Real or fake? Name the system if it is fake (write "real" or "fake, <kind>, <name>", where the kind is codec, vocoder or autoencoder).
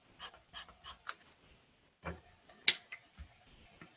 real